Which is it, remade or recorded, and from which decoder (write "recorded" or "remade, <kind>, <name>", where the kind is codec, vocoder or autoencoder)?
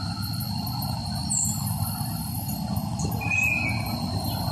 recorded